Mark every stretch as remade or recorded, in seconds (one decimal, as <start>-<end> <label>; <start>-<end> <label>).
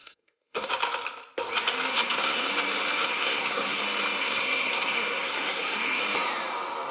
0.0-0.7 remade; 0.7-1.9 recorded; 1.9-2.5 remade; 2.5-3.0 recorded; 3.0-3.8 remade; 3.8-4.2 recorded; 4.2-6.0 remade; 6.0-6.9 recorded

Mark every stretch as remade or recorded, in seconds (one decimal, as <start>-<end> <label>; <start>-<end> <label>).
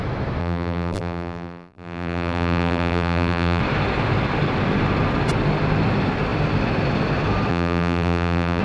0.0-0.4 recorded; 0.4-3.6 remade; 3.6-7.5 recorded; 7.5-8.6 remade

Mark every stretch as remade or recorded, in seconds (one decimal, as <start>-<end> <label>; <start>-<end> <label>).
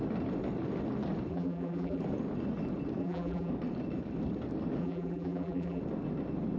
0.0-1.3 recorded; 1.3-2.0 remade; 2.0-3.0 recorded; 3.0-3.5 remade; 3.5-4.8 recorded; 4.8-5.8 remade; 5.8-6.6 recorded